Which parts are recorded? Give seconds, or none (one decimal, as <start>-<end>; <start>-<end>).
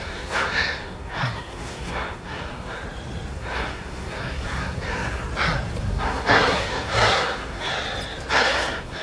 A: 2.8-3.3; 5.2-5.8; 7.7-8.3